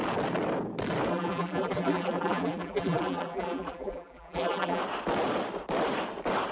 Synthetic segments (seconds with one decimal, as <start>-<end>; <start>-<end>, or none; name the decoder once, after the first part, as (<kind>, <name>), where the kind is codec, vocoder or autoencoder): 1.1-4.8 (vocoder, BigVGAN v2)